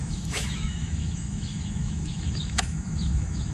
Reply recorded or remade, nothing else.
remade